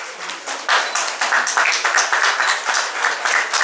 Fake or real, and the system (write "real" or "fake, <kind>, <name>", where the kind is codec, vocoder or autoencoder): real